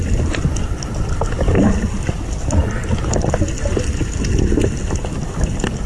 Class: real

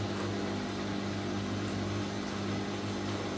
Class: real